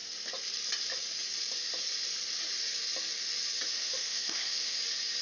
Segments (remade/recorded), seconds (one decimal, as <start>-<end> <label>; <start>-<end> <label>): 0.0-3.7 recorded; 3.7-4.8 remade; 4.8-5.2 recorded